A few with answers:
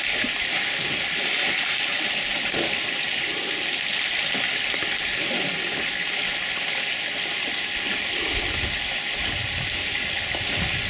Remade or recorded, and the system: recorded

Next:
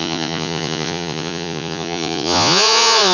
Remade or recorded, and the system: remade, vocoder, Vocos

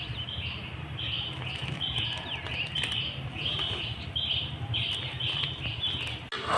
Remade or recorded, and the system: recorded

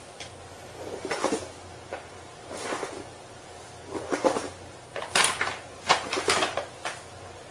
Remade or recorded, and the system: recorded